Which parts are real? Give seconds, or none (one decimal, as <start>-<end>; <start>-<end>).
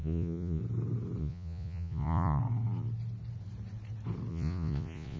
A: 0.6-1.2; 2.4-4.3